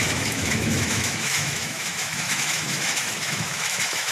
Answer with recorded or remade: remade